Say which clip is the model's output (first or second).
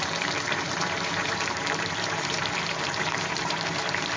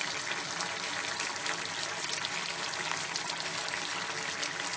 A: first